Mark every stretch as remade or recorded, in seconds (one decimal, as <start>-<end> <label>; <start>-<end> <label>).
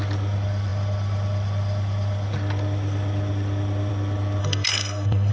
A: 0.0-4.4 recorded; 4.4-5.3 remade